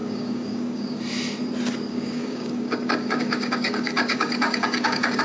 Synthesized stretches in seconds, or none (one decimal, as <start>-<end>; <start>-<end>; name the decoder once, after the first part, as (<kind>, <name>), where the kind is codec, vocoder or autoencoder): 0.0-1.0 (codec, DAC); 1.9-5.2